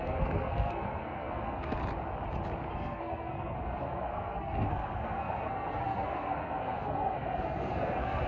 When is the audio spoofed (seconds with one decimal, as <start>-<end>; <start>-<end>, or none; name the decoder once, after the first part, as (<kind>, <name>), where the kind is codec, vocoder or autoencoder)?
0.0-1.8 (codec, SNAC); 2.7-8.3